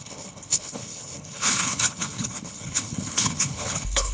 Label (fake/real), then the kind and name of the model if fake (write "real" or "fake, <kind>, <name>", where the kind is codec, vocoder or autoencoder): fake, codec, HILCodec